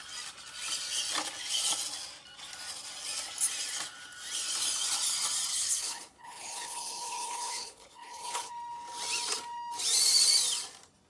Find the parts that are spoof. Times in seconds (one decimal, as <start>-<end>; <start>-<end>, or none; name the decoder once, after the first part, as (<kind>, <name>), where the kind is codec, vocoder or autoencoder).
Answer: 5.5-8.5 (codec, HILCodec)